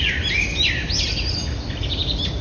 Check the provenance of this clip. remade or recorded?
recorded